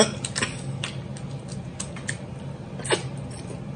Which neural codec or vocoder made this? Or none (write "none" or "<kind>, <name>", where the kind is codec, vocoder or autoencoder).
none